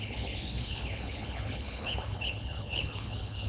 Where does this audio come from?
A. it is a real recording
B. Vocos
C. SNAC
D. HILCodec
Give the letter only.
D